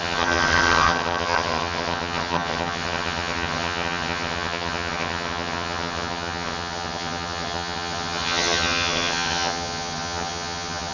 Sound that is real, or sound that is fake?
fake